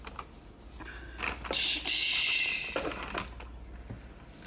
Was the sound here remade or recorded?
recorded